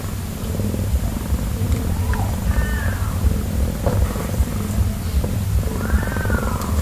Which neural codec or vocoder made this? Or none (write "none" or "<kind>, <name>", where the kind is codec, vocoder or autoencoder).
vocoder, BigVGAN v2